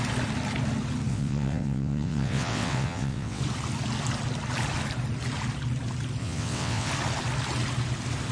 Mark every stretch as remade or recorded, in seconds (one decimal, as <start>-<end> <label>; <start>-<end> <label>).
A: 0.0-1.1 recorded; 1.1-3.4 remade; 3.4-6.2 recorded; 6.2-6.9 remade; 6.9-8.3 recorded